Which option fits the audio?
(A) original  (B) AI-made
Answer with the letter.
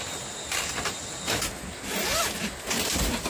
A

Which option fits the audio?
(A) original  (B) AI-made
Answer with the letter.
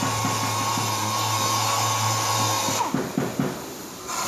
A